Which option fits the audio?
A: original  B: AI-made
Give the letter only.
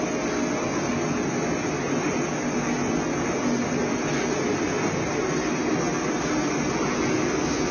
A